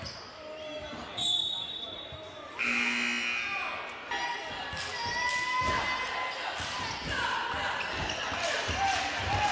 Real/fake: real